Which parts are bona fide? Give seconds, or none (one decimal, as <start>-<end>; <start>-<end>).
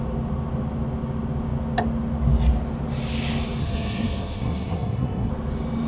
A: 0.0-3.6; 5.3-5.9